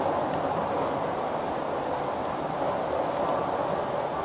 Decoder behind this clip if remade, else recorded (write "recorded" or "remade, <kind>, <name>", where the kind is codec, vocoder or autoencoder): recorded